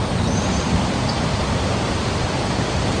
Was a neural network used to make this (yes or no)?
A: no